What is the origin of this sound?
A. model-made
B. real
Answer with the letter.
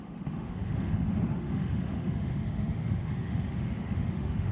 A